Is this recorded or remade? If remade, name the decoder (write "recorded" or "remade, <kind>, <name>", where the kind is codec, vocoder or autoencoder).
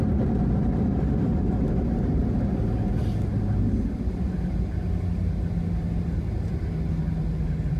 recorded